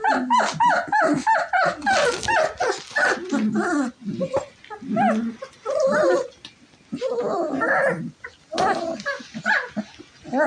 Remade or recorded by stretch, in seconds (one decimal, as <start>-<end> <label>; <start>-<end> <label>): 0.0-10.5 recorded